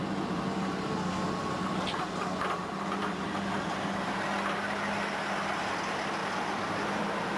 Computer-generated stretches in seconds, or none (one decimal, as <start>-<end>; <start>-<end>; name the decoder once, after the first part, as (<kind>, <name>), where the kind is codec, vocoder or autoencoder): 6.2-7.0 (vocoder, BigVGAN v2)